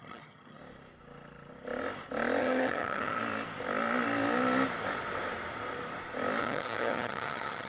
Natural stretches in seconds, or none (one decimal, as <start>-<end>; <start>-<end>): 0.6-2.4; 3.2-6.4